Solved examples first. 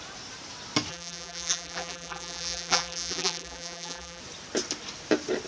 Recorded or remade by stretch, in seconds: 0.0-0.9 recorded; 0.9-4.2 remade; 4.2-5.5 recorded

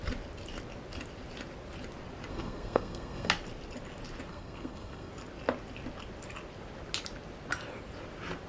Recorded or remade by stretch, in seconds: 0.0-2.3 recorded; 2.3-3.3 remade; 3.3-4.3 recorded; 4.3-5.1 remade; 5.1-8.5 recorded

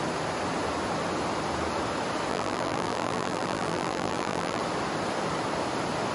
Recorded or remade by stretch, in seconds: 0.0-2.3 recorded; 2.3-4.6 remade; 4.6-6.1 recorded

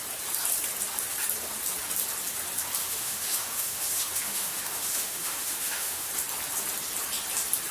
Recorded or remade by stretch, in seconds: 0.0-2.8 recorded; 2.8-6.1 remade; 6.1-7.7 recorded